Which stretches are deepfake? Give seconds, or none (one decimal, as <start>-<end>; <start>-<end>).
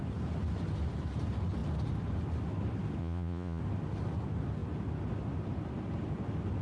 3.0-3.6